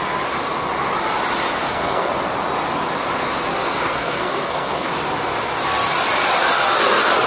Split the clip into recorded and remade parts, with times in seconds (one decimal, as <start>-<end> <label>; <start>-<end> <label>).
0.0-1.6 recorded; 1.6-2.1 remade; 2.1-3.6 recorded; 3.6-4.9 remade; 4.9-7.3 recorded